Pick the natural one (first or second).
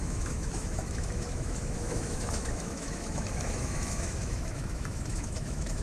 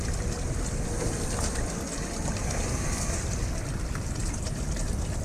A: second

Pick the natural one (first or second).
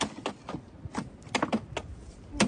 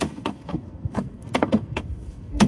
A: first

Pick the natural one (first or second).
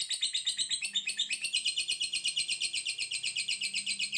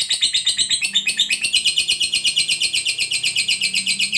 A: first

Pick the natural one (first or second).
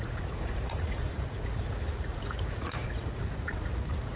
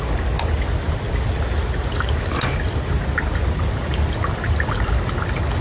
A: second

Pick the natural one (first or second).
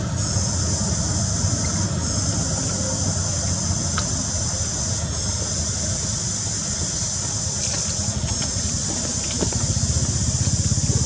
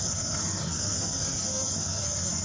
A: first